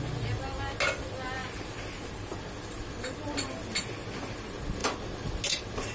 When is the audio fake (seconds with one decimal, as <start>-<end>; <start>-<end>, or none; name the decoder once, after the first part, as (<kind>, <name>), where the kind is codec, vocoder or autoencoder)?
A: none